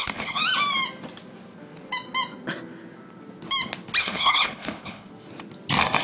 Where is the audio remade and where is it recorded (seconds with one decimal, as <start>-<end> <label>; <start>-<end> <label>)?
0.0-0.4 remade; 0.4-4.0 recorded; 4.0-5.1 remade; 5.1-6.0 recorded